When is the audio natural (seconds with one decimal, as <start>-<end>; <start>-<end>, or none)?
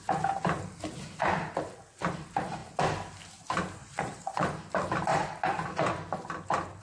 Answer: 0.0-3.8; 4.4-6.8